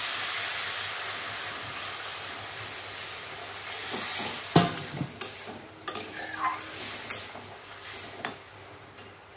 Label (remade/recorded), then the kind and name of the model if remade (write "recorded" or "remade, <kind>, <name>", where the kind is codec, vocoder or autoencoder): recorded